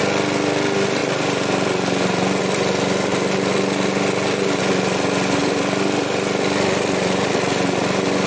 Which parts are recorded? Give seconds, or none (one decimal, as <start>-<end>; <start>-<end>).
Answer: 0.0-1.0; 2.4-5.4; 7.3-8.3